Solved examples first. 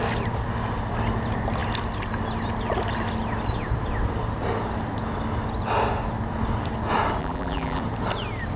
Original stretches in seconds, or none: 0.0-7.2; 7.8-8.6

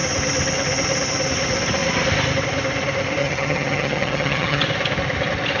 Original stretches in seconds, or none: 0.0-3.2; 4.6-5.6

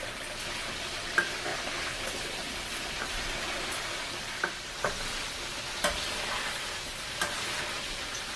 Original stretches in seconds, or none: 0.0-1.5; 6.5-8.4

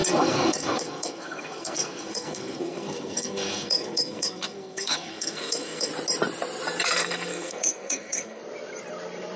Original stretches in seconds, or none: 5.9-6.8; 8.4-9.4

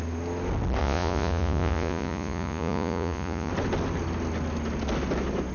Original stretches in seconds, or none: 0.0-0.8; 3.5-5.5

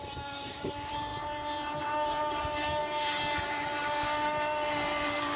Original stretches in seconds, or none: 1.1-1.8

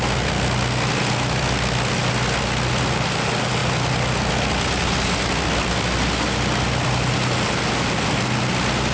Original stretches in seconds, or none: 0.0-8.9

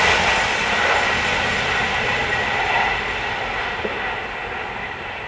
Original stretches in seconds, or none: 0.0-5.3